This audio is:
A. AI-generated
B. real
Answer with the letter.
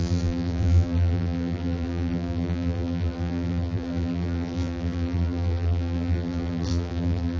A